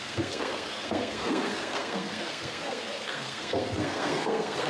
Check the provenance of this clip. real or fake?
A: fake